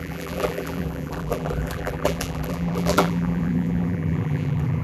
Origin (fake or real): fake